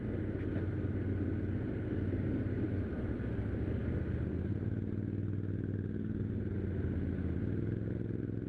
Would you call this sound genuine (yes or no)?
yes